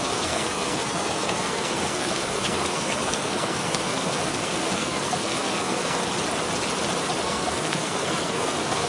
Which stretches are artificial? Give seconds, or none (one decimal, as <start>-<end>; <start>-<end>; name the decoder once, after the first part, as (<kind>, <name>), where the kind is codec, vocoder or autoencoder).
0.0-6.0 (codec, SNAC); 7.2-8.9